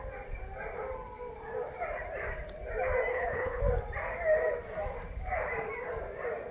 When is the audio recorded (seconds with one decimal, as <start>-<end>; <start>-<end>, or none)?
0.0-3.1; 3.6-6.5